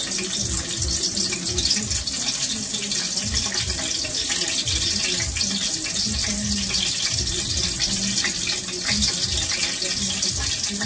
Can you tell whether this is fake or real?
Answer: real